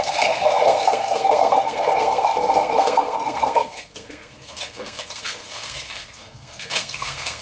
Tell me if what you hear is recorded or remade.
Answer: remade